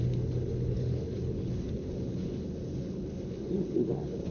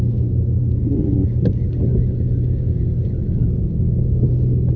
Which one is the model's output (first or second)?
first